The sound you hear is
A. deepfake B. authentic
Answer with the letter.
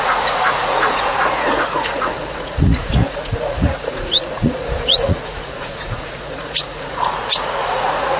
A